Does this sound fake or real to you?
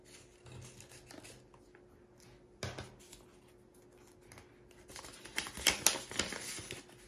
real